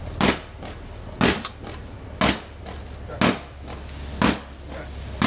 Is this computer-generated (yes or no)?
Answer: no